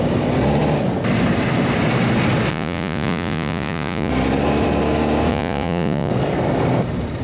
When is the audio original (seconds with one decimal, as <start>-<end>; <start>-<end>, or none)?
0.0-2.5; 4.1-5.3; 6.1-7.2